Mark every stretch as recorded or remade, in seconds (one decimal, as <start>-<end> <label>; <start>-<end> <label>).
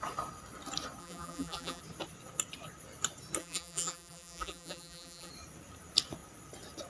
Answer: 0.0-1.0 recorded; 1.0-1.8 remade; 1.8-3.4 recorded; 3.4-5.3 remade; 5.3-6.9 recorded